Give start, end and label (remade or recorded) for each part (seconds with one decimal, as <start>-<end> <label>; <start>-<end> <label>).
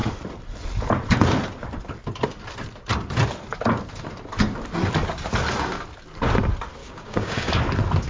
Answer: 0.0-6.8 recorded; 6.8-7.5 remade; 7.5-8.1 recorded